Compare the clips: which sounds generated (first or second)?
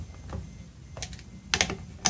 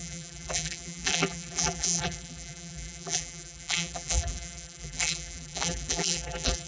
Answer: second